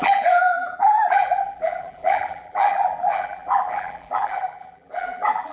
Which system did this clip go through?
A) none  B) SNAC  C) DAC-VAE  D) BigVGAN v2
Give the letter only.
D